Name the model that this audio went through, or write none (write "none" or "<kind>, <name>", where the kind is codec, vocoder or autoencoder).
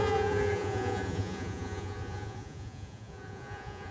vocoder, Vocos